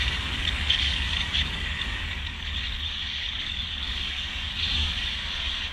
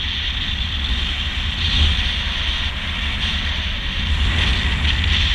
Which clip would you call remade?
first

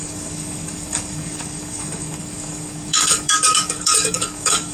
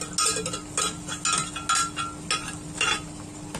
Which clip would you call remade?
first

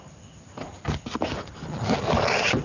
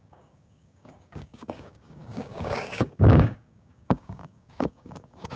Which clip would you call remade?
second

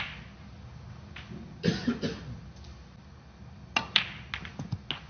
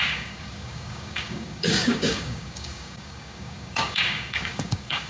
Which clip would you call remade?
second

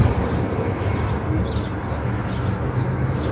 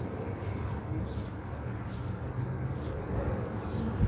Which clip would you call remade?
second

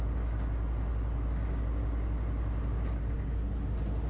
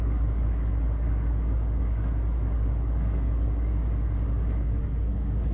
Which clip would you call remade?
second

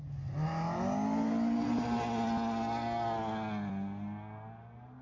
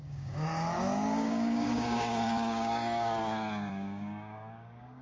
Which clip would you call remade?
second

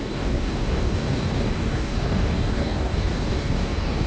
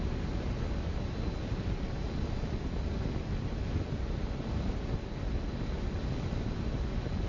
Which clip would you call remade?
first